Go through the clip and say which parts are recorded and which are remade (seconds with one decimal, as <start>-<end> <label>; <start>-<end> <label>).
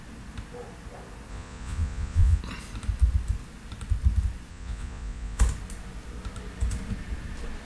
0.0-1.3 recorded; 1.3-2.4 remade; 2.4-4.5 recorded; 4.5-5.4 remade; 5.4-7.6 recorded